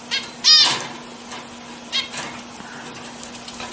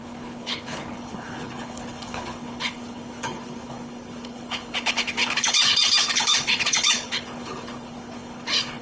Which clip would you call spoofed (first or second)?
second